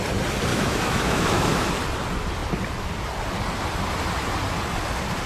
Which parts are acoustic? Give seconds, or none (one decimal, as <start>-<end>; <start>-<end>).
0.0-0.5; 1.7-5.3